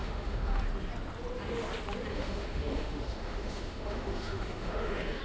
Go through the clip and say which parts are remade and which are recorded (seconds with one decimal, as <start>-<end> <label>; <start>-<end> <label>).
0.0-0.6 remade; 0.6-2.1 recorded; 2.1-5.2 remade